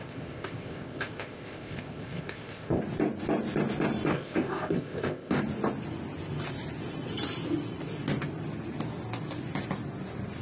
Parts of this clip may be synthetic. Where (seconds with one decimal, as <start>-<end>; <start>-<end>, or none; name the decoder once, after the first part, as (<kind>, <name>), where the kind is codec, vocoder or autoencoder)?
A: 0.0-2.8 (codec, ZipCodec); 4.1-5.4